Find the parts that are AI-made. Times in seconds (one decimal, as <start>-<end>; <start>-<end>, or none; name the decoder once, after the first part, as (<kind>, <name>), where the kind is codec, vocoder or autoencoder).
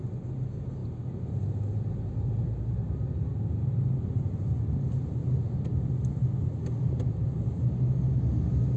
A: none